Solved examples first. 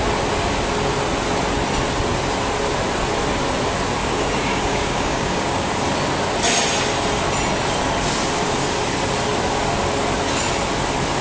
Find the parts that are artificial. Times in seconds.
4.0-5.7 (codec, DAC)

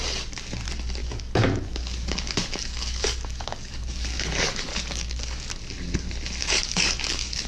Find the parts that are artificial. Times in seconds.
1.0-5.5 (codec, DAC); 6.4-7.5

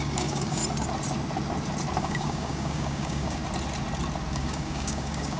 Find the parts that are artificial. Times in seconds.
0.0-0.6 (codec, DAC); 2.0-3.4; 4.3-5.4